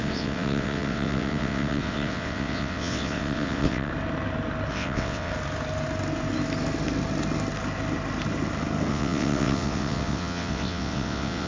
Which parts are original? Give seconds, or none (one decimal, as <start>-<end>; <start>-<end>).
3.9-4.7; 5.3-8.9